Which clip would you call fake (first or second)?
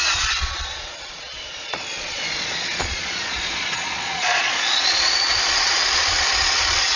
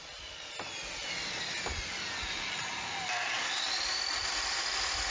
first